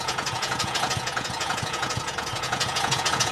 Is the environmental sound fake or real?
fake